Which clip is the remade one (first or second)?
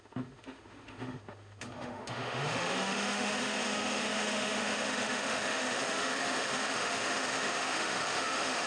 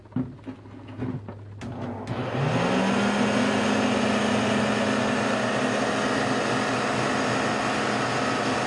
first